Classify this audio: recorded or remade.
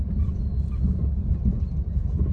recorded